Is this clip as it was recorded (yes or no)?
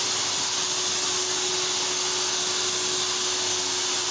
yes